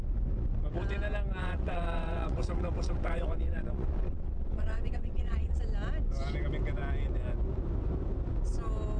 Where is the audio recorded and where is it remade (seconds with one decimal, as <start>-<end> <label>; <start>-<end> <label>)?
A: 0.0-1.4 recorded; 1.4-5.6 remade; 5.6-9.0 recorded